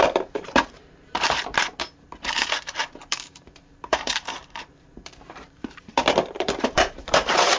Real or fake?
fake